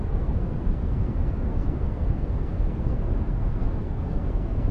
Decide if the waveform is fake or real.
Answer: fake